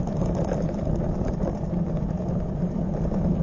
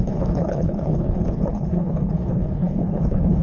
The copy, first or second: second